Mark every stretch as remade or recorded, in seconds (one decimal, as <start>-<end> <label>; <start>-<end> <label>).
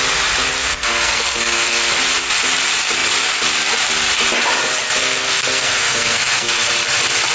0.0-0.6 recorded; 0.6-2.0 remade; 2.0-5.0 recorded; 5.0-6.7 remade; 6.7-7.3 recorded